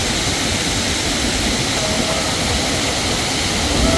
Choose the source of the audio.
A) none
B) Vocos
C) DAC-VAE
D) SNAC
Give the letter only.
A